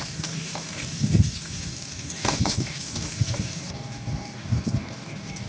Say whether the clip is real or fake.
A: fake